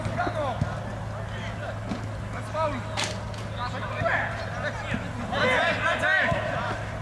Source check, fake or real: real